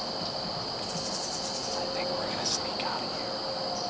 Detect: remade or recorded recorded